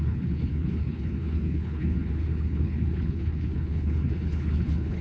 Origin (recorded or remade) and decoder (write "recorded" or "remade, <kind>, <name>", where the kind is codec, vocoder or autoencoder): remade, codec, HILCodec